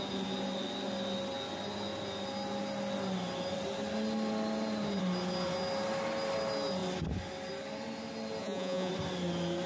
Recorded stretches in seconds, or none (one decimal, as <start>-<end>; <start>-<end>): 0.0-8.4; 8.9-9.7

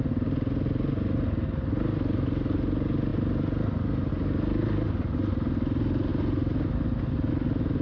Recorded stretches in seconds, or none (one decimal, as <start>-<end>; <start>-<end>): 0.0-7.8

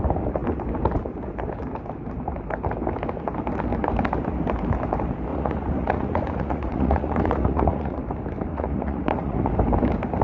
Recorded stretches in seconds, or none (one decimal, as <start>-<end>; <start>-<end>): 0.0-5.3; 8.0-8.5; 9.5-10.2

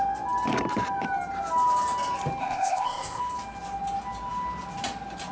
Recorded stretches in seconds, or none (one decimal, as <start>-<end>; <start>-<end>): 0.0-2.4; 3.2-5.3